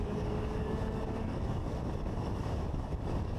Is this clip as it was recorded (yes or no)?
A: no